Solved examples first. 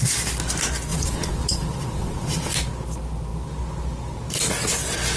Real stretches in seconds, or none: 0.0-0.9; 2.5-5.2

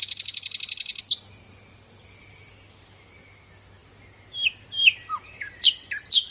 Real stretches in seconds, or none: 0.0-6.3

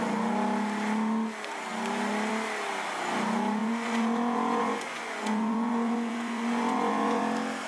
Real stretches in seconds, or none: 0.0-3.6; 7.2-7.7